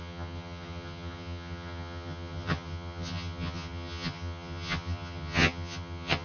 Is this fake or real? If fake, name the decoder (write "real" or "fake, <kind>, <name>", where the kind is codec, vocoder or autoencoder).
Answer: fake, vocoder, HiFi-GAN